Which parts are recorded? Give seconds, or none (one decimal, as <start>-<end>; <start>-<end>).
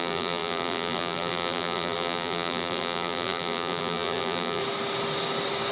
4.6-5.7